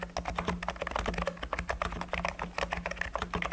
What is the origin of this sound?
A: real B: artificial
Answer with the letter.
A